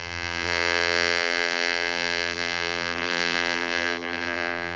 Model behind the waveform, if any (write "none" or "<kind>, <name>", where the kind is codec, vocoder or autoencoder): vocoder, BigVGAN v2